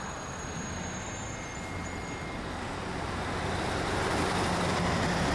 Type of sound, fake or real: real